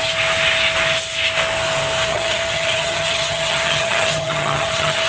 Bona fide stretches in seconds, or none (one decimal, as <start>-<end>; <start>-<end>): 0.0-2.1